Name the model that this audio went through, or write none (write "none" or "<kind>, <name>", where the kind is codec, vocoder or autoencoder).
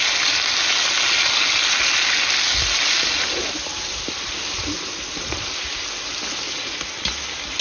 none